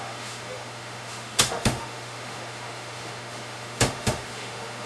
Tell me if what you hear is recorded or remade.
remade